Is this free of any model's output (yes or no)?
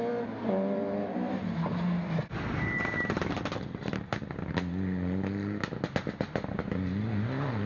yes